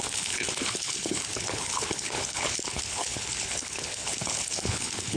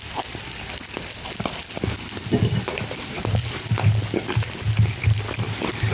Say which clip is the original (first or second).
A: second